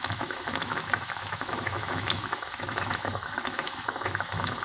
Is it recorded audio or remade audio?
remade